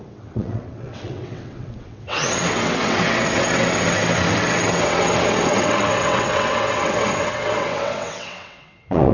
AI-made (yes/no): yes